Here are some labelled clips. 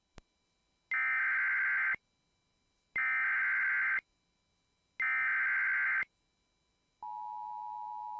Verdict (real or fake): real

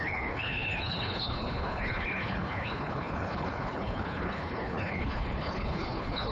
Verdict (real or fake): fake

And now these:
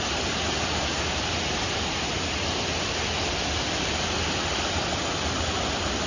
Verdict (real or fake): real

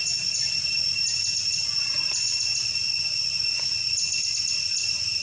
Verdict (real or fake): real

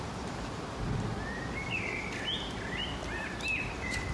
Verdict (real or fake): real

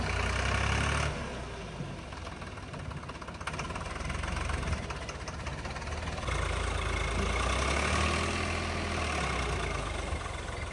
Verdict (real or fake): real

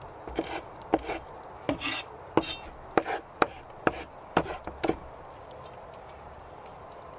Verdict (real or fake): real